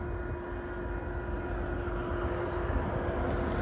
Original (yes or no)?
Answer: yes